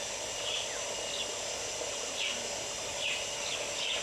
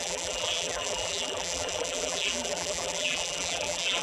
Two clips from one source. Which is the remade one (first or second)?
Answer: second